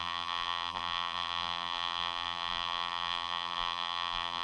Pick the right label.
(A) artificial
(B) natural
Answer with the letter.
A